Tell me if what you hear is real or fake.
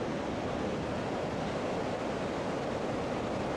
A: real